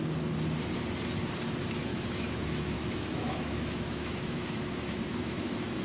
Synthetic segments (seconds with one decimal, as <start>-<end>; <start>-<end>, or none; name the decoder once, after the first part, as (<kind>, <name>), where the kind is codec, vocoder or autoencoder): 1.9-5.8 (autoencoder, DAC-VAE)